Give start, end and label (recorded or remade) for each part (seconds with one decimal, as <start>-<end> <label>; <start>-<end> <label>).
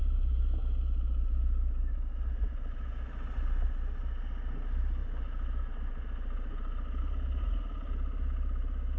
0.0-9.0 recorded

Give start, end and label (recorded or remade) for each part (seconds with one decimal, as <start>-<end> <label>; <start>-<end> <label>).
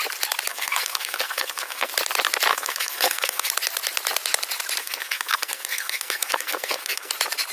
0.0-0.5 recorded; 0.5-1.9 remade; 1.9-2.5 recorded; 2.5-3.5 remade; 3.5-4.8 recorded; 4.8-7.1 remade; 7.1-7.5 recorded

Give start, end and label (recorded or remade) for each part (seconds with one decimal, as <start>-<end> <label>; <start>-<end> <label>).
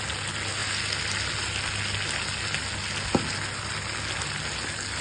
0.0-5.0 recorded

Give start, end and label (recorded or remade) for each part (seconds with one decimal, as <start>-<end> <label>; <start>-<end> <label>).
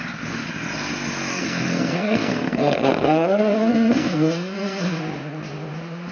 0.0-1.3 recorded; 1.3-5.0 remade; 5.0-6.1 recorded